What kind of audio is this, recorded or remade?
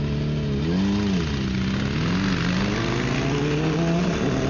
recorded